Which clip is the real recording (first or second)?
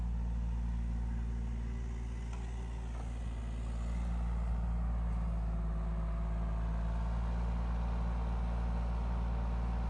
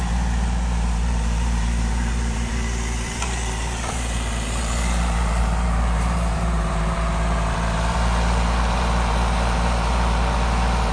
first